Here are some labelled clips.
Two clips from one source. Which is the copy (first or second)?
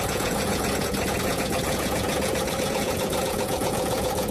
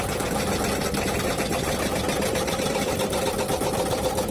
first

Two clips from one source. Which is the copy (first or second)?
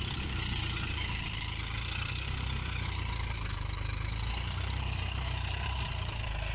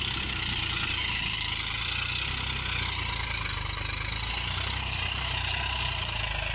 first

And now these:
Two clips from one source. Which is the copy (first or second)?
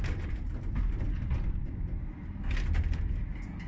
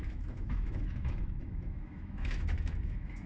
second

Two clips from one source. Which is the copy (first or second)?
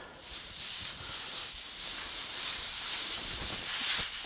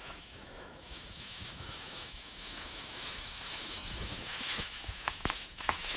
second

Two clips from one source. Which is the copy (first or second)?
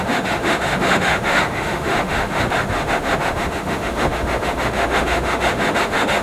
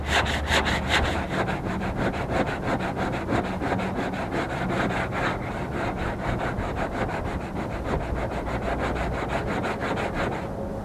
first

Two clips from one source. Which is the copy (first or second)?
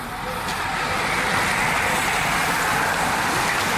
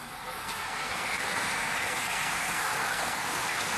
second